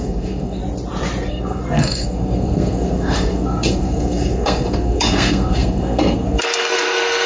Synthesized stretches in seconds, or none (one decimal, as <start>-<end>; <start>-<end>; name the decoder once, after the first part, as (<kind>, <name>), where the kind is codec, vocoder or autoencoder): 0.0-0.6 (codec, SNAC); 1.3-7.3